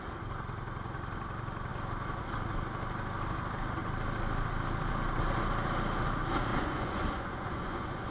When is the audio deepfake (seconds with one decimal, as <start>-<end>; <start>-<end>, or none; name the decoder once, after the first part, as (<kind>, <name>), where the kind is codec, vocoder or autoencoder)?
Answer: 6.5-8.1 (vocoder, Vocos)